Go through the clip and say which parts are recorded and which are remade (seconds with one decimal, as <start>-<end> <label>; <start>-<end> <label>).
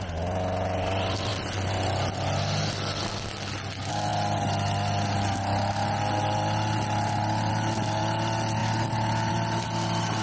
0.0-10.2 recorded